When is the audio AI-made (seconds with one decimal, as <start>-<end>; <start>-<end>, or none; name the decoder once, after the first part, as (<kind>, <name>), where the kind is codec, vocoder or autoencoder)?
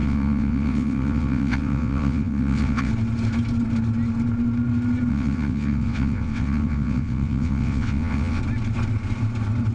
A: 0.0-2.9 (vocoder, WaveNeXt); 5.1-8.4